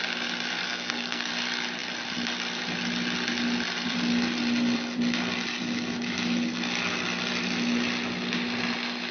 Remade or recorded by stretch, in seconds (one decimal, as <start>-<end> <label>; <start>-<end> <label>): 0.0-0.6 recorded; 0.6-1.3 remade; 1.3-9.1 recorded